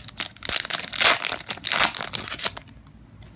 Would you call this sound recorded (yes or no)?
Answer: yes